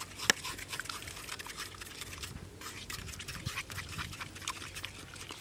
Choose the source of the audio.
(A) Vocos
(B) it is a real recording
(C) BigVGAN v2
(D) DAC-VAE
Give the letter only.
B